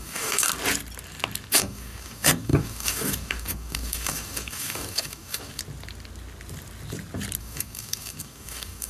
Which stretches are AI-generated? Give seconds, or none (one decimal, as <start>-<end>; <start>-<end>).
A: 0.0-0.5; 1.5-5.6; 7.4-8.9

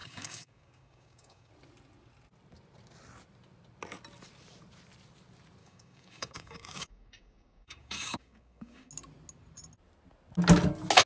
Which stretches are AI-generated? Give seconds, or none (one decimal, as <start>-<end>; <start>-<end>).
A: 0.0-1.5; 5.6-8.9

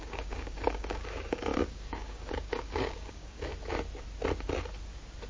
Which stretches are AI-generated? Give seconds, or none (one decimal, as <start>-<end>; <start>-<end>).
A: 0.0-3.5

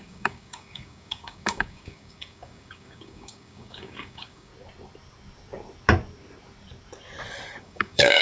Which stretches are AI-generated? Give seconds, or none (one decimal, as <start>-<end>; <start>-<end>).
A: 0.0-4.5; 7.6-8.2

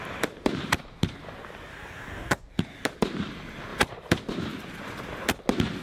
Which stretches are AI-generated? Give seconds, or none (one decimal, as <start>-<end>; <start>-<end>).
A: 1.7-2.5

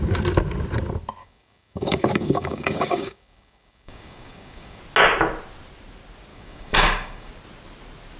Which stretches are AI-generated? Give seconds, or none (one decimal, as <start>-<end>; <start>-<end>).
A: 1.2-4.8; 6.3-7.3

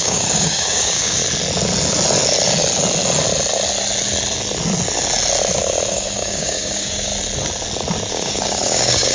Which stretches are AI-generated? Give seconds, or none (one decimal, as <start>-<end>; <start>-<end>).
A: 0.0-1.2; 5.9-7.1; 8.1-9.1

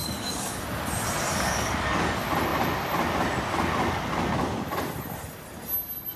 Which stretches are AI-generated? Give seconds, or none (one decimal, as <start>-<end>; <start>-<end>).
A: 0.0-0.6; 1.3-2.0